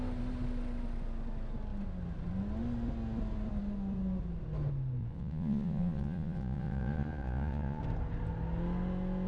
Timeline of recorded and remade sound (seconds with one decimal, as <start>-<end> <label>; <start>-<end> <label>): 0.0-5.0 recorded; 5.0-7.8 remade; 7.8-9.3 recorded